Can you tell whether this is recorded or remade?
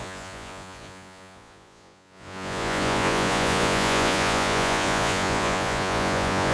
remade